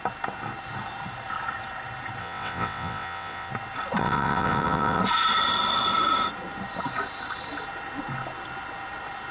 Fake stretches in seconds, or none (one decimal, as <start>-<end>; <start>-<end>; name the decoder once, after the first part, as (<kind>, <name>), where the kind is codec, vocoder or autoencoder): 2.2-3.5 (vocoder, WaveNeXt); 4.0-5.0